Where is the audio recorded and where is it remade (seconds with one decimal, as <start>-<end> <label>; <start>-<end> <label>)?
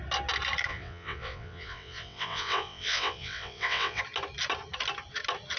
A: 0.0-0.7 recorded; 0.7-4.0 remade; 4.0-5.6 recorded